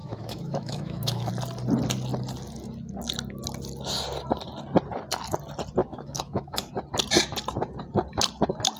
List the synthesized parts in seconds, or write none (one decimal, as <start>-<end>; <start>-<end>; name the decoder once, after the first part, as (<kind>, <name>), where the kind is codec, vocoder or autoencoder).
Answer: 0.0-1.3 (autoencoder, DAC-VAE); 5.8-6.7

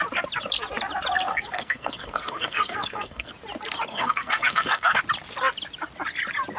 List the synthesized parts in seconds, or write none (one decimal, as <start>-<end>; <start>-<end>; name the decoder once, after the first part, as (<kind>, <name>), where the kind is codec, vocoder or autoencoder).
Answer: 1.3-3.3 (codec, SNAC); 3.9-5.0

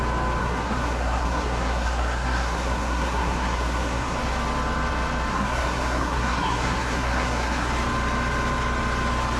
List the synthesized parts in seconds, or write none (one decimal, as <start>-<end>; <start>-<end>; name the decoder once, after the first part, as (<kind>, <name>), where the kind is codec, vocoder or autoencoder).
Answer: 0.4-4.2 (codec, SNAC); 5.3-7.7

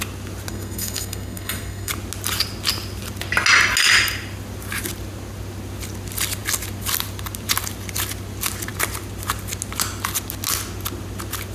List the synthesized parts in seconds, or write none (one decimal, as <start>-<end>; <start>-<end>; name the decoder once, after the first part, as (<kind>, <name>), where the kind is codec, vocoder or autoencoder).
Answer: 0.5-1.9 (codec, SNAC)